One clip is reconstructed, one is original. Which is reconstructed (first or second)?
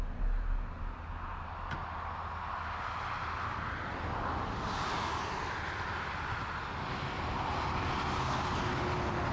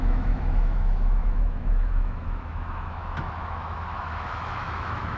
second